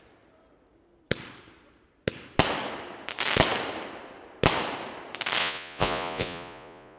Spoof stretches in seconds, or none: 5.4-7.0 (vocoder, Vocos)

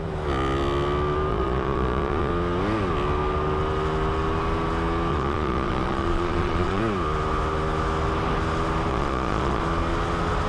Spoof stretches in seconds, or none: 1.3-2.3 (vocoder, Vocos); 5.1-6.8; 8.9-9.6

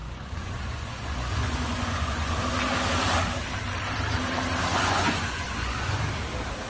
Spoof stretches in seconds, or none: 0.0-2.4 (vocoder, Vocos); 4.7-6.0

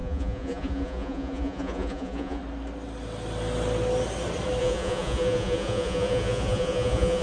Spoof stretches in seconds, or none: 0.0-2.4 (vocoder, Vocos); 4.6-7.2

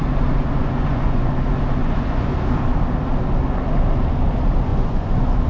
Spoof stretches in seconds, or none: 0.6-1.3 (vocoder, Vocos); 1.8-2.3; 4.7-5.5

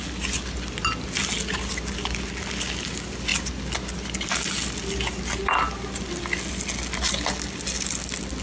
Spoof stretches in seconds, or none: none